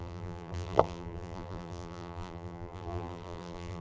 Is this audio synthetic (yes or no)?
yes